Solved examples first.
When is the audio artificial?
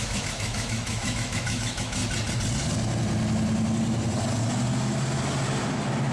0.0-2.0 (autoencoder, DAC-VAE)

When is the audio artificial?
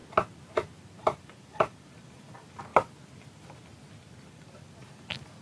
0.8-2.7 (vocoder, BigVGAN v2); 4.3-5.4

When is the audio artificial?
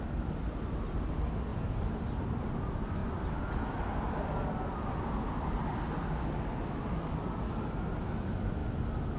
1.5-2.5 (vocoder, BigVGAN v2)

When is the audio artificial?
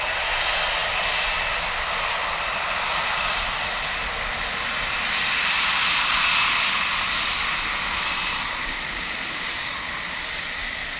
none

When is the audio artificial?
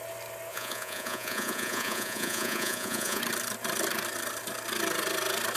0.5-3.2 (vocoder, Vocos)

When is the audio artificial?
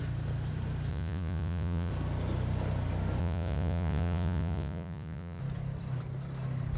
0.9-1.9 (vocoder, Vocos); 3.2-5.4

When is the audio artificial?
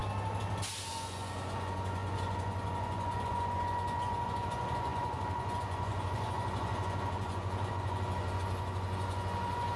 0.9-9.8 (vocoder, Vocos)